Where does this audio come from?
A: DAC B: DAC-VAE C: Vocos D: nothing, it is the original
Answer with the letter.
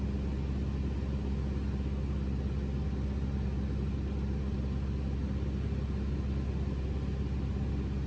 D